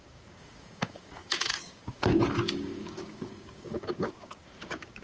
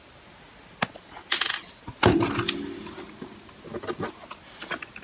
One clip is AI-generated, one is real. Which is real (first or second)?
second